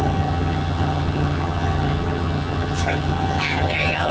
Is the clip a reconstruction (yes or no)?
yes